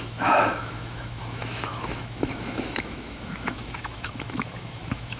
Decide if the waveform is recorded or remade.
remade